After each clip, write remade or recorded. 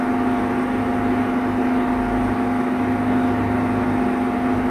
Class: recorded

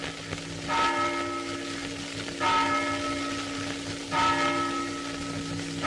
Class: recorded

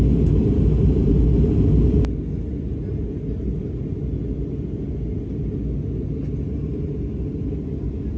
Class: recorded